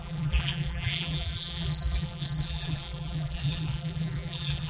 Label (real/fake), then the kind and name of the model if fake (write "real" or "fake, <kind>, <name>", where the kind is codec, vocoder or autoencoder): fake, vocoder, BigVGAN v2